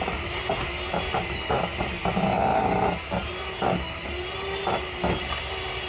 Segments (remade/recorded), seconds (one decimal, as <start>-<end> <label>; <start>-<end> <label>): 0.0-5.9 recorded